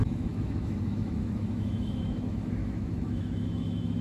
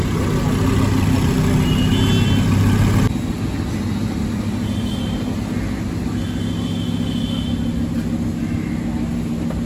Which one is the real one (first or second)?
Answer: second